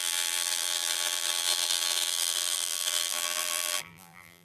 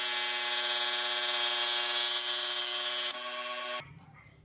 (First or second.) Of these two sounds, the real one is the second